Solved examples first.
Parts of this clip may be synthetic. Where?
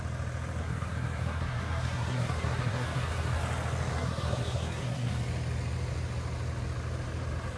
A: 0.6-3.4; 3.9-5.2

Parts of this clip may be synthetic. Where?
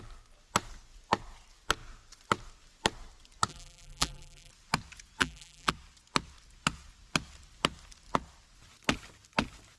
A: 3.5-4.5; 5.2-5.7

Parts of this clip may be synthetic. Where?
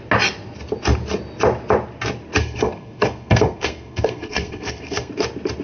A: 2.4-5.1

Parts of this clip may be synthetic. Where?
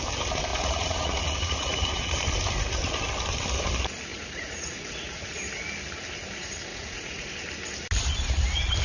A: 0.5-2.1; 4.1-5.4; 6.7-7.3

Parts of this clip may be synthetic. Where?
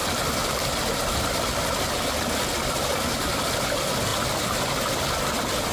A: none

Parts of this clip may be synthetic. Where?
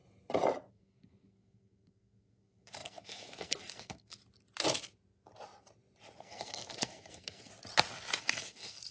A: 0.7-4.2; 6.2-7.5; 8.2-8.9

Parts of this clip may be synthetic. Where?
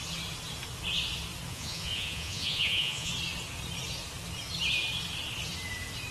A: 1.5-3.1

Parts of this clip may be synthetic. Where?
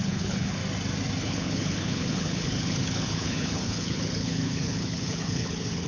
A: 0.0-0.6; 1.2-5.9